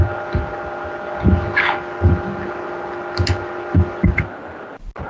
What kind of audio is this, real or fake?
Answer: real